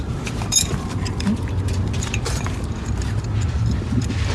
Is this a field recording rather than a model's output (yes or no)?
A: no